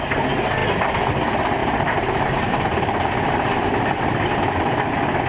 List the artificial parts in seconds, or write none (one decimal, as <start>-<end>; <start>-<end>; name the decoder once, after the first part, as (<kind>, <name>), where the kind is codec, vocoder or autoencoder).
1.6-4.8 (vocoder, BigVGAN v2)